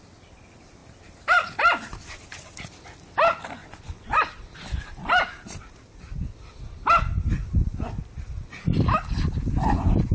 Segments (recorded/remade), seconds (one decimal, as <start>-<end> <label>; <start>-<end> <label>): 0.0-3.6 recorded; 3.6-4.3 remade; 4.3-10.1 recorded